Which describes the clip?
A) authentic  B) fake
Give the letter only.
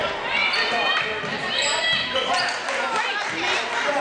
A